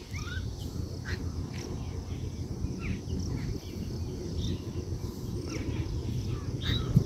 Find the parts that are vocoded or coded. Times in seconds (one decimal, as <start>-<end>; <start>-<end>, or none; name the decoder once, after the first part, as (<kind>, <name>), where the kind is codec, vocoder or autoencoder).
5.3-6.3 (vocoder, BigVGAN v2)